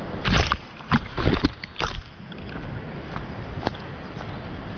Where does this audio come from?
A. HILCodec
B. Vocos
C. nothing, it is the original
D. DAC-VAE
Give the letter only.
C